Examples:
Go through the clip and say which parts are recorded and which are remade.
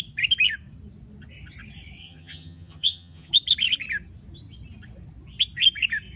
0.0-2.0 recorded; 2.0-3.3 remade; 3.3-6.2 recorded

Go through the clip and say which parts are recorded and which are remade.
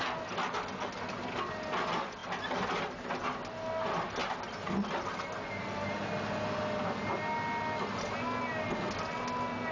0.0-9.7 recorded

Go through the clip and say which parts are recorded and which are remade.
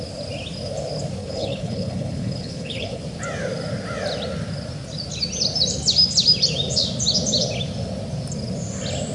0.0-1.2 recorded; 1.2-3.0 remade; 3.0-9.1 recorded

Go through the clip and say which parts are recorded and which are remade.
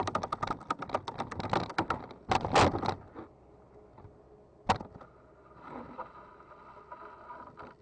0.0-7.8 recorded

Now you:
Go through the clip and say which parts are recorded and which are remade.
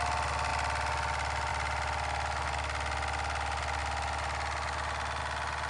0.0-5.7 recorded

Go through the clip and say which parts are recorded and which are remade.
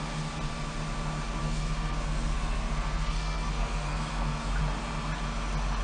0.0-1.4 recorded; 1.4-4.6 remade; 4.6-5.8 recorded